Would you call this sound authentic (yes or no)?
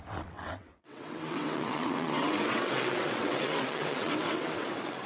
no